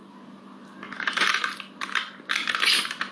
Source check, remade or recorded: recorded